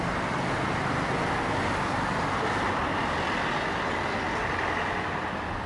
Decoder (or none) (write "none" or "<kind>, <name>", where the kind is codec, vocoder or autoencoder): none